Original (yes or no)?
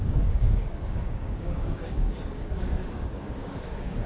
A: no